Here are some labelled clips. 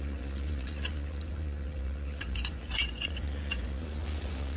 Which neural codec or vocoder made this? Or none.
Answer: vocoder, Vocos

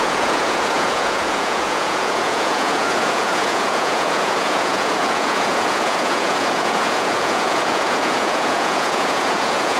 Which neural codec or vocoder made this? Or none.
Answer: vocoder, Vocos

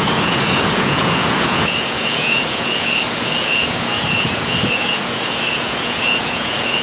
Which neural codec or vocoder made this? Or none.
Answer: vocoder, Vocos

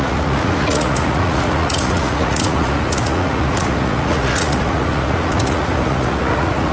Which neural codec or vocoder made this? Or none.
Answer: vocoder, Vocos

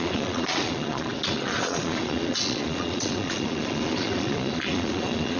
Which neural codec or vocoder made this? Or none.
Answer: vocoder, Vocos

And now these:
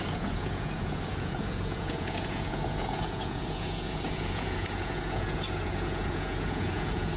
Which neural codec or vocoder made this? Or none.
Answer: vocoder, Vocos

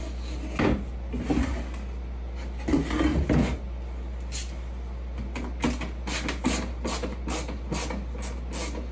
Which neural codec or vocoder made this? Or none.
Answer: none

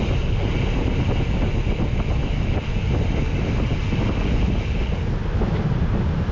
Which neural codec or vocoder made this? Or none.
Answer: none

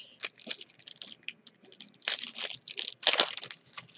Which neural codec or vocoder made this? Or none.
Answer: none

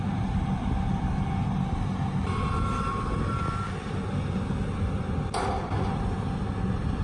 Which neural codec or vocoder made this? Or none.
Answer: none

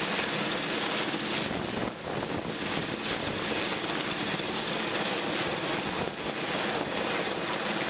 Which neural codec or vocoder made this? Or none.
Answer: none